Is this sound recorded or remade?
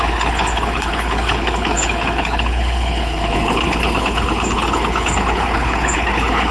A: remade